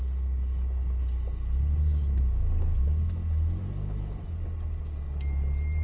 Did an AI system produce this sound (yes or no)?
no